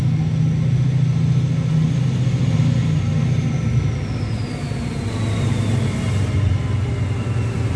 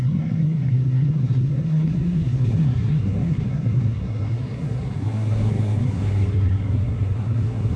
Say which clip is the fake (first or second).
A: second